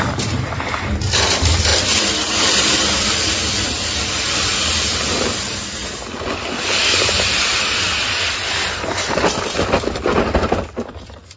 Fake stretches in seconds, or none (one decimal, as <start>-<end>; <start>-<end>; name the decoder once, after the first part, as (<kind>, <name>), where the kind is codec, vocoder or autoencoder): 0.0-5.8 (vocoder, BigVGAN v2); 6.4-11.4